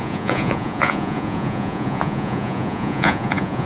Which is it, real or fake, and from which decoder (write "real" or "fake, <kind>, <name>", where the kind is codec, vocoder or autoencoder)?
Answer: fake, vocoder, Vocos